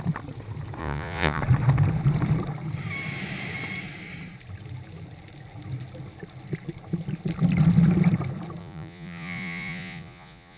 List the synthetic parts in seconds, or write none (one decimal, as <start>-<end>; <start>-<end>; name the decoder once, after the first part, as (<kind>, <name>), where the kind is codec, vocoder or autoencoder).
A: 0.8-1.4 (vocoder, Vocos); 8.6-10.6